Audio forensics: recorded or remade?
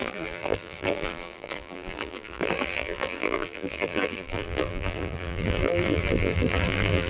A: remade